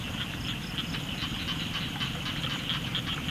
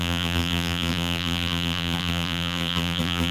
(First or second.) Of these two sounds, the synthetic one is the second